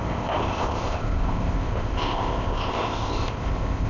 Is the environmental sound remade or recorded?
remade